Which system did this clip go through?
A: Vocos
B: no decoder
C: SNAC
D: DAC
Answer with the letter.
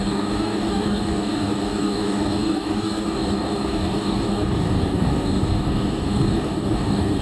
D